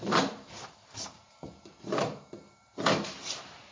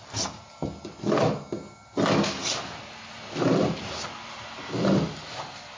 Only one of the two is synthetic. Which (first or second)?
first